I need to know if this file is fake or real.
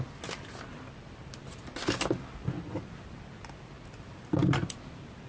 real